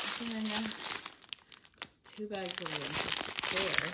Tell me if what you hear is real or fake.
real